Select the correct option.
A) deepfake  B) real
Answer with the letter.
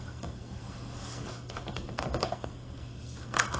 A